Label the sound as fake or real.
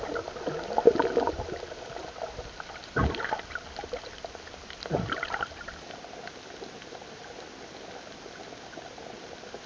real